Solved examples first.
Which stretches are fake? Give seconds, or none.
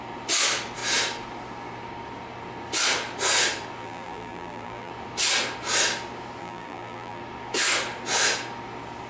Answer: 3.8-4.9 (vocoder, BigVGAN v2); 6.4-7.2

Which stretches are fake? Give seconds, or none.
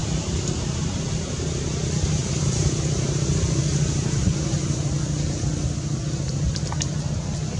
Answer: 0.0-0.9 (vocoder, BigVGAN v2); 2.2-4.8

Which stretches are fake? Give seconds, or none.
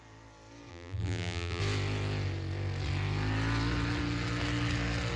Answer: 0.7-1.6 (vocoder, BigVGAN v2)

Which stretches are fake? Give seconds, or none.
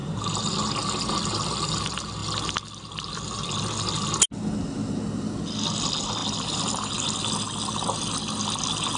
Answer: 0.0-1.8 (vocoder, BigVGAN v2); 2.2-3.2; 6.2-6.9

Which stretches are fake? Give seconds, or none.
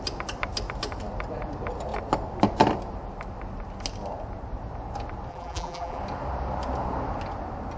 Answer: 5.3-6.0 (vocoder, BigVGAN v2)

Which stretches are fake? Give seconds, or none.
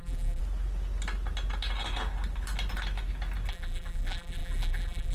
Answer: 0.0-0.4 (vocoder, BigVGAN v2); 3.5-5.1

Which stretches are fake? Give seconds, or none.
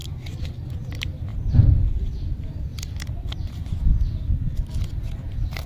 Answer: 0.0-2.7 (vocoder, BigVGAN v2); 3.3-3.9; 5.2-5.7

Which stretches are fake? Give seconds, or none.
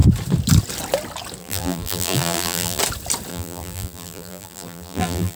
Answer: 1.4-2.8 (vocoder, BigVGAN v2); 3.3-5.4